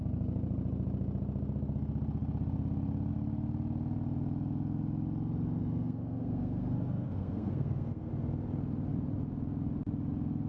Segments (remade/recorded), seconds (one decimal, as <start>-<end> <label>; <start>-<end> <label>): 0.0-5.6 recorded; 5.6-8.1 remade; 8.1-10.5 recorded